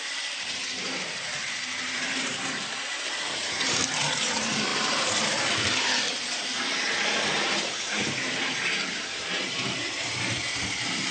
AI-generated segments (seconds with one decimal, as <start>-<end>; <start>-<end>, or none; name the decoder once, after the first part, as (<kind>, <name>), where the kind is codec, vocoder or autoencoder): 0.0-11.1 (vocoder, BigVGAN v2)